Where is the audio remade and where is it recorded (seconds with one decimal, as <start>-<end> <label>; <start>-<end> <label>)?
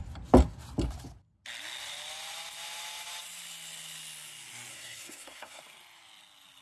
0.0-4.7 recorded; 4.7-5.6 remade; 5.6-6.6 recorded